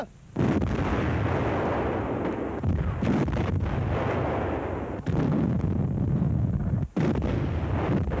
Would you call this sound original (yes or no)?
yes